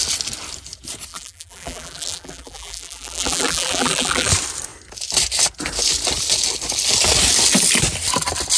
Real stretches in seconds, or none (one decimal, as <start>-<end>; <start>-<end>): 0.0-1.1; 4.3-8.6